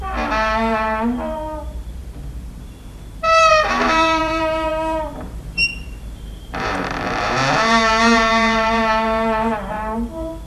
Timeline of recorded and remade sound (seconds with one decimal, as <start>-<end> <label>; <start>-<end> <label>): 0.0-2.0 remade; 2.0-2.8 recorded; 2.8-10.5 remade